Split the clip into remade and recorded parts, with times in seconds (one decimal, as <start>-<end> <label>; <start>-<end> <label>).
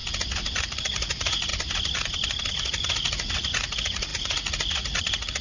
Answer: 0.0-0.6 recorded; 0.6-1.5 remade; 1.5-2.5 recorded; 2.5-5.4 remade